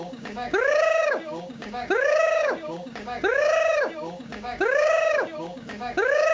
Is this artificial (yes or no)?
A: yes